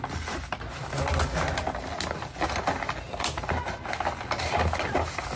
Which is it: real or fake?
real